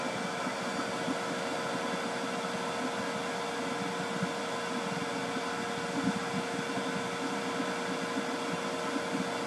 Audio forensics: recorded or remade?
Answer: recorded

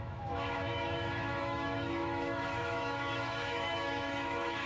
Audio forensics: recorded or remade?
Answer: remade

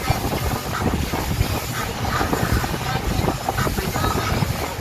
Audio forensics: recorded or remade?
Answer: recorded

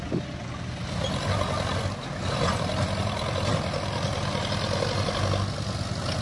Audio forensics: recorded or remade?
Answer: recorded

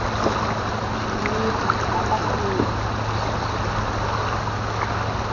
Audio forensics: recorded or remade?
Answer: recorded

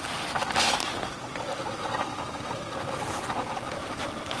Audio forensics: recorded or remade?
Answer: recorded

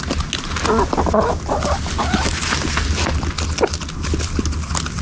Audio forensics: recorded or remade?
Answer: recorded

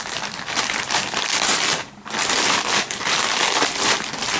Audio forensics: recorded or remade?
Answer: remade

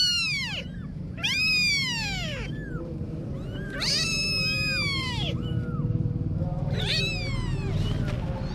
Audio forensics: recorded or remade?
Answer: recorded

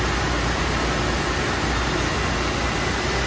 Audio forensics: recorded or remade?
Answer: recorded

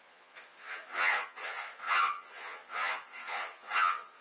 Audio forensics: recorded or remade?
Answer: remade